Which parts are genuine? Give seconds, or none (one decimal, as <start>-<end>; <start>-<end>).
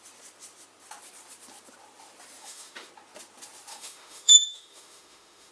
0.0-2.4; 2.9-3.7